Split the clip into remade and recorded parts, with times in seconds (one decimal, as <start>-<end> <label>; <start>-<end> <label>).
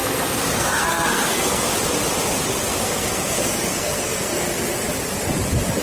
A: 0.0-1.7 remade; 1.7-2.7 recorded; 2.7-4.6 remade; 4.6-5.8 recorded